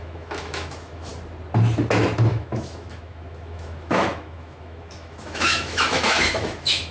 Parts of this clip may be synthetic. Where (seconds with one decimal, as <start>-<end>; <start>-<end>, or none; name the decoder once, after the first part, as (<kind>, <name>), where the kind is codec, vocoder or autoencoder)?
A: 0.0-1.1 (autoencoder, DAC-VAE); 2.3-6.9